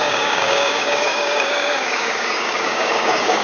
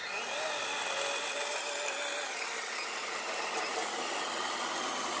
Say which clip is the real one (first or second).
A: second